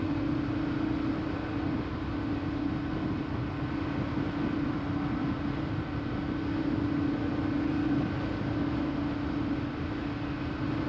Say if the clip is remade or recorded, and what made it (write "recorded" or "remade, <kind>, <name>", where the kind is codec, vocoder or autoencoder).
recorded